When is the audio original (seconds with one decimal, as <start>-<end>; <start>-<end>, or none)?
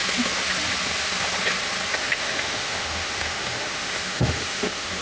0.0-2.0